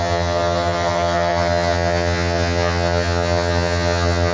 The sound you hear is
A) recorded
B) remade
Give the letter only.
B